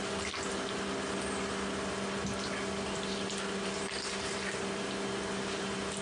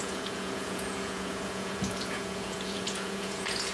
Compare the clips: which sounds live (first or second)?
first